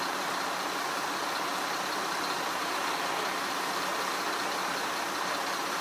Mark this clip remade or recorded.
recorded